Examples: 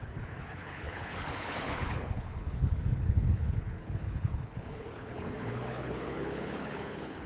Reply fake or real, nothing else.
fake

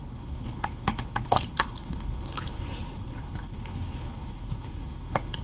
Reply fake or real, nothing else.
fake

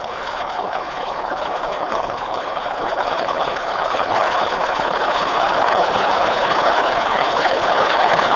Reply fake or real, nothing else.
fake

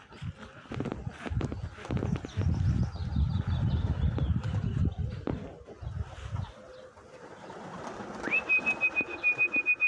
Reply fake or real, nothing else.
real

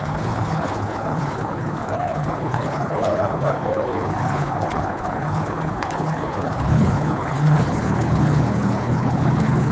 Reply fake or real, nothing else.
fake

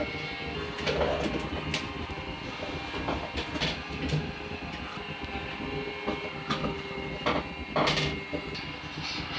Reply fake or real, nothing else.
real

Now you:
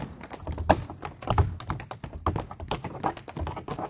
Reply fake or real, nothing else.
real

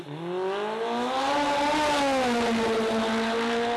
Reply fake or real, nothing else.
real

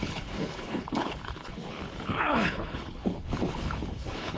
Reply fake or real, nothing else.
fake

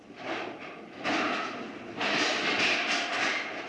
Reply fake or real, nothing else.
real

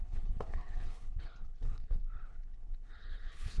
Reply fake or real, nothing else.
fake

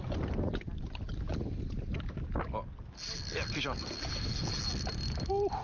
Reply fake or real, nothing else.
real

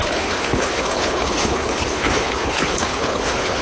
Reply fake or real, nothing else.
fake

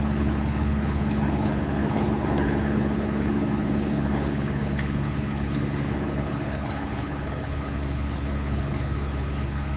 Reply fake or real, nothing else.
fake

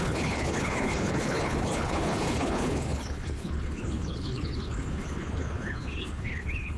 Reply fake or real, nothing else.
fake